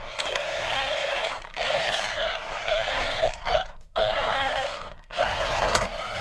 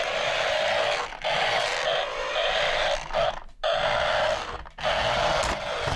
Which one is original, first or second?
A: second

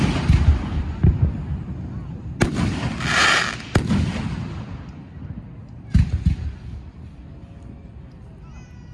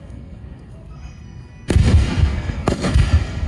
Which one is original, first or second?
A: first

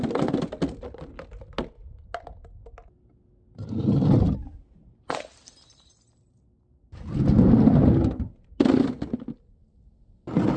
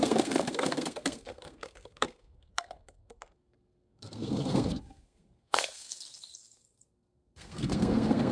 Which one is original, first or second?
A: first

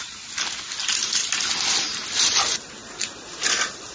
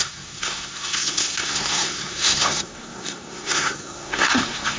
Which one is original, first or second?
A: first